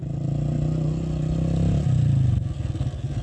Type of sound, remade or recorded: recorded